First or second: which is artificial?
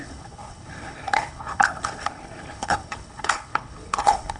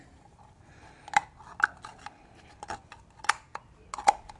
first